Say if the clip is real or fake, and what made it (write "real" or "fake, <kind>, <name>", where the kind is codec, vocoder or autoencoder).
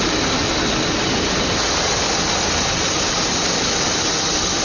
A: real